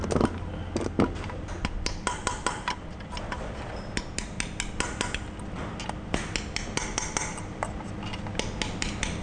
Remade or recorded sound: recorded